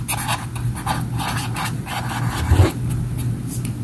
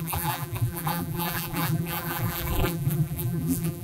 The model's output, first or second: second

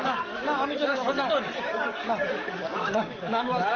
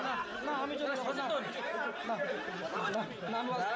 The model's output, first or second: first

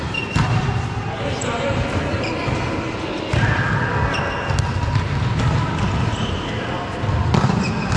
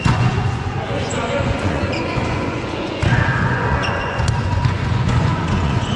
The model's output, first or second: second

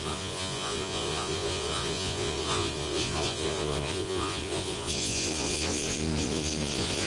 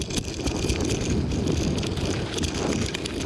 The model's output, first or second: first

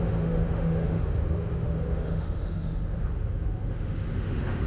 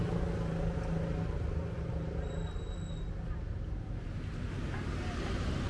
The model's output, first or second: first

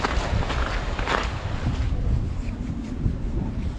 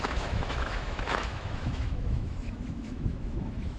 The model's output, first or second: second